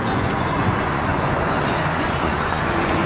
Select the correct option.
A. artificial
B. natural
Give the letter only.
A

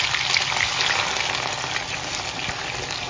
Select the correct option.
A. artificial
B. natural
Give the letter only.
B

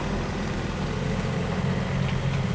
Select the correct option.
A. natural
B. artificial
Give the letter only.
A